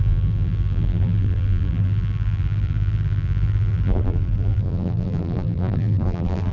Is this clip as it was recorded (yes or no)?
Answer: no